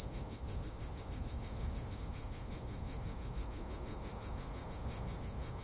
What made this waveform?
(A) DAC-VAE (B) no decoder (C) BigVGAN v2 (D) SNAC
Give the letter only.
A